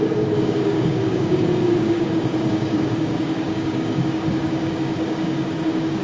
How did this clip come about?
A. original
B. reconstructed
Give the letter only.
B